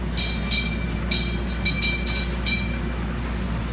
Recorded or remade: recorded